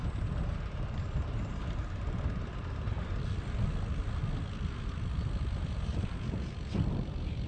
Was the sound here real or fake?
real